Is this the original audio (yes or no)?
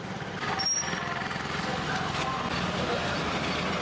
yes